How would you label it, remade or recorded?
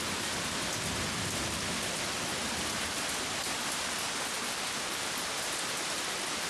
recorded